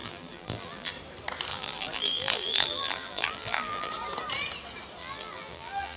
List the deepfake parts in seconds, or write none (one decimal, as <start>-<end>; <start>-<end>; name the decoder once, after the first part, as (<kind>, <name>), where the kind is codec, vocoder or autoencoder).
0.0-0.9 (vocoder, BigVGAN v2); 1.5-3.9; 5.0-6.0